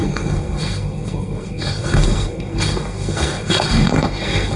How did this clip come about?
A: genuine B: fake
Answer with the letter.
B